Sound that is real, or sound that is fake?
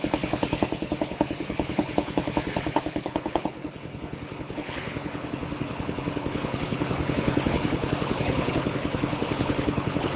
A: fake